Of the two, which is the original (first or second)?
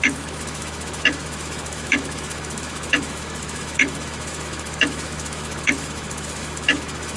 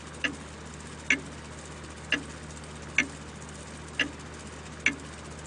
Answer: second